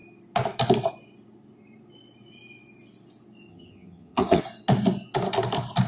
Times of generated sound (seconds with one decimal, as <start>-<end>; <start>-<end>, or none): 3.5-4.4